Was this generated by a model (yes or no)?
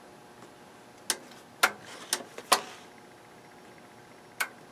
no